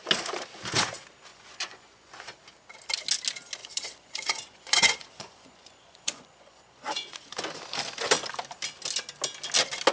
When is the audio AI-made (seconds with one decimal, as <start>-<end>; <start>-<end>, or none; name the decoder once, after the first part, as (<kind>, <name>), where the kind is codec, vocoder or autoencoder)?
1.3-2.1 (vocoder, Vocos); 3.6-7.3